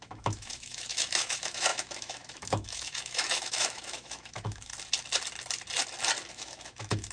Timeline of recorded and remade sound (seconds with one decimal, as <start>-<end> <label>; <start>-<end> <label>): 0.0-4.7 remade; 4.7-6.3 recorded; 6.3-7.1 remade